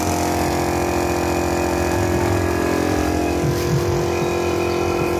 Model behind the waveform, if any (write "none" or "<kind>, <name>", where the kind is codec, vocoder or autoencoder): none